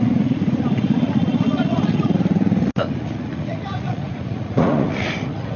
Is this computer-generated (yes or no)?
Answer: yes